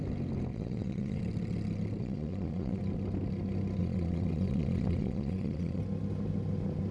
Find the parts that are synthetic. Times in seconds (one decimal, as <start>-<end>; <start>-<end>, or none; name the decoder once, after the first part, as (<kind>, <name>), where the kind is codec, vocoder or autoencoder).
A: 0.5-1.2 (vocoder, Vocos); 2.0-2.8; 3.8-5.8